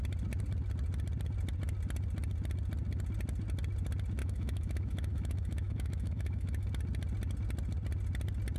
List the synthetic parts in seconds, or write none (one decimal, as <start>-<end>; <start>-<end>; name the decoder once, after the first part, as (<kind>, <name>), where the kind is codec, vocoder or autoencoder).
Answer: 4.2-6.7 (autoencoder, DAC-VAE)